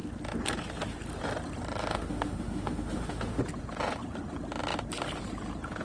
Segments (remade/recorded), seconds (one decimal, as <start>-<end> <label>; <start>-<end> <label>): 0.0-1.9 recorded; 1.9-3.4 remade; 3.4-5.8 recorded